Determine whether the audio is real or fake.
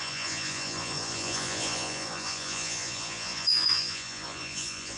fake